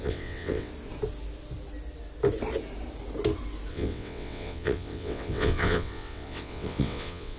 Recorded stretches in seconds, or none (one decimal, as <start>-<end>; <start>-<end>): 0.7-3.7